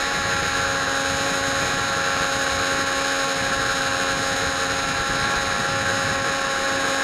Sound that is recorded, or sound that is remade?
recorded